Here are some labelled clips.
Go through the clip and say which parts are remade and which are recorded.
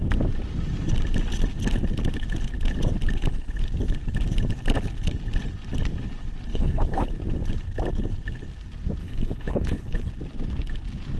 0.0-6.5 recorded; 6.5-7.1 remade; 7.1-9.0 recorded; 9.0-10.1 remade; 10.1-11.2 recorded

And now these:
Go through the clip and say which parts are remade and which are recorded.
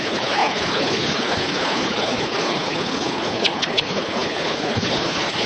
0.0-5.5 remade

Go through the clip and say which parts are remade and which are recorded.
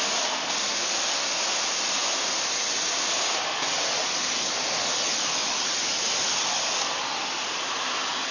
0.0-8.3 recorded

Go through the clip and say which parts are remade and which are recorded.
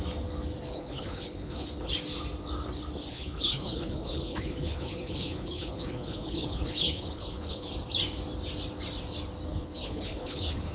0.0-0.7 recorded; 0.7-1.9 remade; 1.9-3.1 recorded; 3.1-7.7 remade; 7.7-9.5 recorded; 9.5-10.7 remade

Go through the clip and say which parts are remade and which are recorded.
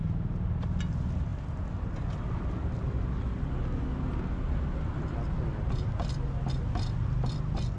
0.0-7.8 recorded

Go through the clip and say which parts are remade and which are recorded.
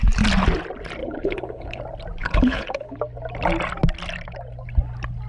0.0-1.0 recorded; 1.0-1.8 remade; 1.8-2.2 recorded; 2.2-3.0 remade; 3.0-5.3 recorded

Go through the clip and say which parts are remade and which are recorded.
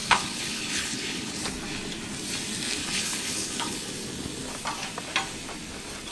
0.0-1.4 remade; 1.4-2.8 recorded; 2.8-3.9 remade; 3.9-6.1 recorded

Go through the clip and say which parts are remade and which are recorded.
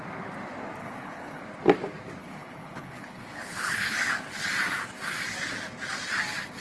0.0-0.8 recorded; 0.8-1.4 remade; 1.4-2.2 recorded; 2.2-4.5 remade; 4.5-6.6 recorded